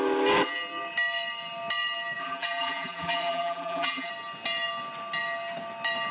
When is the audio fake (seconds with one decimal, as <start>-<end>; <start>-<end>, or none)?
2.2-4.1

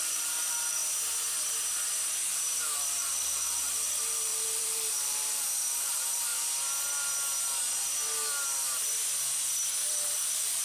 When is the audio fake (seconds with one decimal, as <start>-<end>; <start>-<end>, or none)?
0.0-0.8; 2.3-6.3; 9.9-10.6

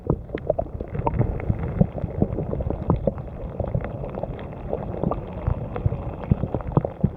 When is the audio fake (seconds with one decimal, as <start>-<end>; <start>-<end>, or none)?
0.0-5.5; 6.3-7.2